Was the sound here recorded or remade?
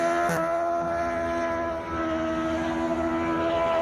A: recorded